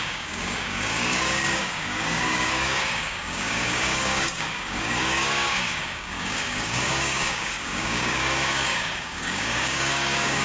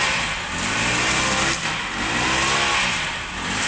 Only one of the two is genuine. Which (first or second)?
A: second